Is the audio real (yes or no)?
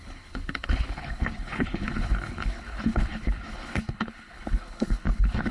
no